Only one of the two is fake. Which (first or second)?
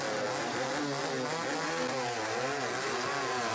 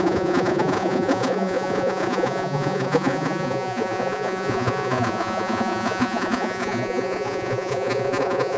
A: second